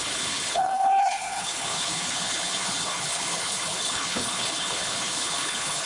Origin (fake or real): fake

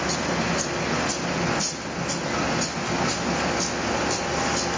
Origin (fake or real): real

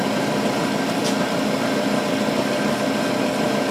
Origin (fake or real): real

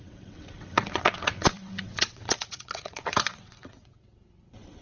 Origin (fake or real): fake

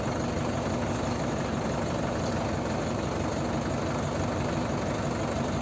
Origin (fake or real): real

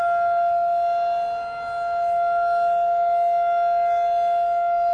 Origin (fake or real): real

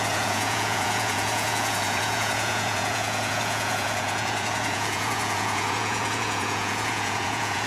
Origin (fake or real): fake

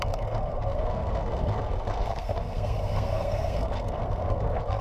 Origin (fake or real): fake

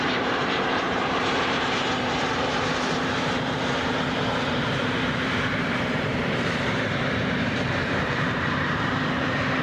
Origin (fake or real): fake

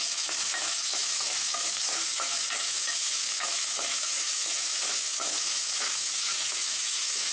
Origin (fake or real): fake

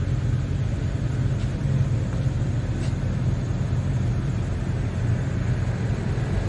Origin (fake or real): real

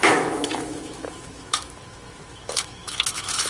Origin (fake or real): fake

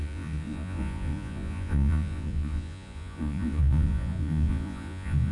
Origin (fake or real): fake